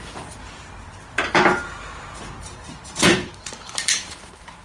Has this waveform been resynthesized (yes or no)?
yes